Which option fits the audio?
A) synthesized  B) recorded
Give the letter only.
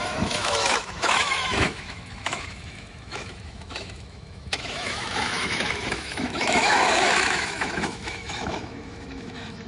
A